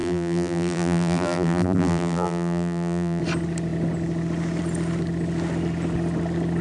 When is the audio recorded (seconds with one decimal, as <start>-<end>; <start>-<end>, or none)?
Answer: 3.2-6.6